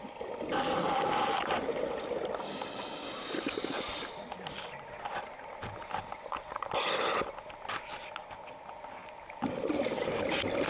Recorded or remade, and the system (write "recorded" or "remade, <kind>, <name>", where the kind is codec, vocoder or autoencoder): recorded